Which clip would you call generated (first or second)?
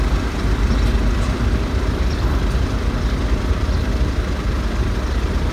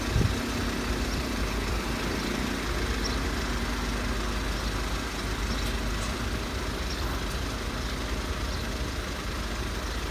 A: first